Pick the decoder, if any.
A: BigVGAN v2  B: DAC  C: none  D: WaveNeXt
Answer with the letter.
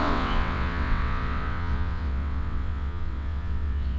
D